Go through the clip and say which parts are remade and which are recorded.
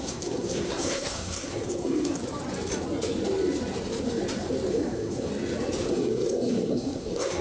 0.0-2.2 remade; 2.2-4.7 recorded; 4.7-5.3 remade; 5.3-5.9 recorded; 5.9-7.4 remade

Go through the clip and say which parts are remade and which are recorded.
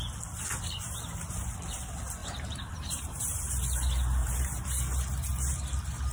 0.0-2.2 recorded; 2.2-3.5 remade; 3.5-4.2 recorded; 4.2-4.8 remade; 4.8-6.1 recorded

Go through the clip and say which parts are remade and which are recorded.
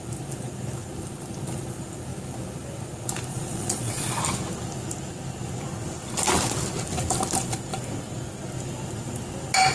0.0-3.3 recorded; 3.3-4.2 remade; 4.2-9.7 recorded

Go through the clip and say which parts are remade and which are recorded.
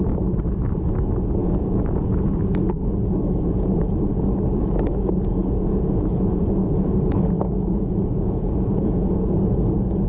0.0-1.4 recorded; 1.4-2.7 remade; 2.7-5.4 recorded; 5.4-9.4 remade; 9.4-10.1 recorded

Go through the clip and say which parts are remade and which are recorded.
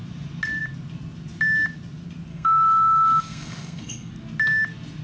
0.0-2.3 recorded; 2.3-4.1 remade; 4.1-5.0 recorded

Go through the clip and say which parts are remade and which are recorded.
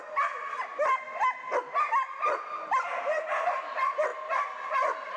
0.0-4.1 recorded; 4.1-5.2 remade